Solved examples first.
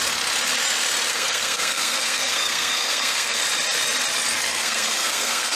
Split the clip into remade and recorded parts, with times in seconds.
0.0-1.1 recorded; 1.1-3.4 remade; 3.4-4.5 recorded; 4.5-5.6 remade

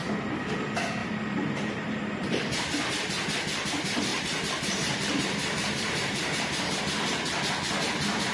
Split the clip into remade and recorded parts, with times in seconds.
0.0-1.0 recorded; 1.0-2.4 remade; 2.4-4.1 recorded; 4.1-6.8 remade; 6.8-8.3 recorded

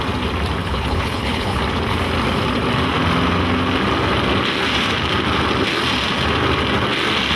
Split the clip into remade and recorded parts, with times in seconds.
0.0-0.6 recorded; 0.6-1.6 remade; 1.6-7.4 recorded

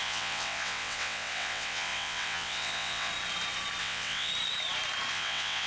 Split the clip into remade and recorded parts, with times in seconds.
0.0-3.1 remade; 3.1-3.8 recorded; 3.8-4.3 remade; 4.3-5.1 recorded; 5.1-5.7 remade

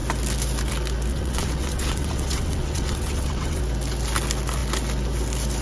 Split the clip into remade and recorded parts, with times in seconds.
0.0-1.1 recorded; 1.1-3.6 remade; 3.6-5.6 recorded

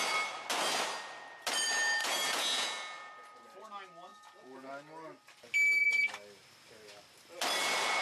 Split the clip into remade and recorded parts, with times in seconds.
0.0-2.0 recorded; 2.0-3.1 remade; 3.1-4.1 recorded; 4.1-4.7 remade; 4.7-8.0 recorded

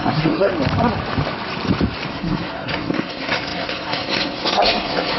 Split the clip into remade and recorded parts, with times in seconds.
0.0-0.5 remade; 0.5-2.1 recorded; 2.1-5.2 remade